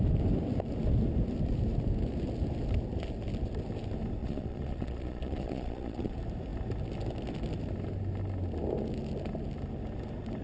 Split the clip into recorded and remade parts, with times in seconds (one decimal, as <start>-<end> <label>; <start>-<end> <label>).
0.0-4.2 recorded; 4.2-6.1 remade; 6.1-10.4 recorded